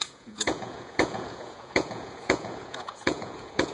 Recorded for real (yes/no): no